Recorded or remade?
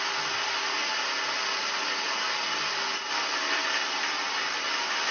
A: recorded